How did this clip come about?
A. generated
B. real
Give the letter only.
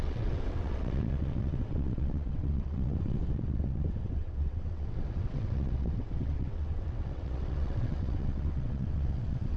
A